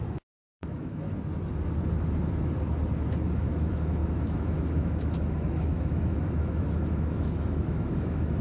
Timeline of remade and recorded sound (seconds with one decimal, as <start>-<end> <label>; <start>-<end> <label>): 0.0-1.1 remade; 1.1-3.1 recorded; 3.1-8.4 remade